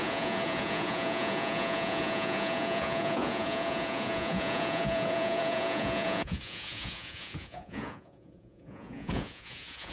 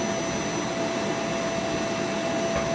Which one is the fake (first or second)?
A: first